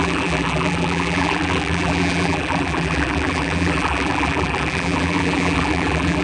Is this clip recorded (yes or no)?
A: no